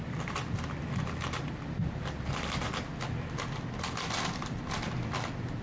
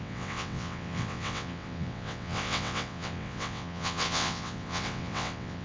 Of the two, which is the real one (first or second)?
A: first